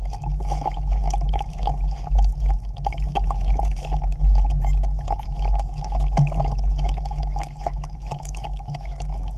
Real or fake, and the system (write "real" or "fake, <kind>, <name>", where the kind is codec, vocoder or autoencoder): fake, autoencoder, DAC-VAE